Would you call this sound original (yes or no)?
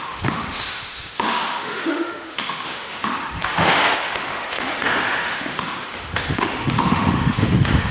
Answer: no